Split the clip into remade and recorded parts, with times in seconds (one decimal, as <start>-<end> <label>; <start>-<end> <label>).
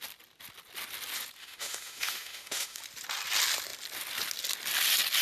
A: 0.0-1.4 recorded; 1.4-2.8 remade; 2.8-5.2 recorded